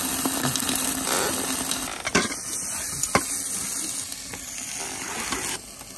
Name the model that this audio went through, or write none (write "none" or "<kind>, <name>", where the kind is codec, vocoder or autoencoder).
none